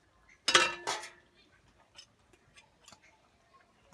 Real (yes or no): yes